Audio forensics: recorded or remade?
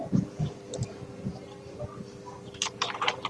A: remade